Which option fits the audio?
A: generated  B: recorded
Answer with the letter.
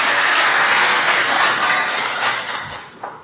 A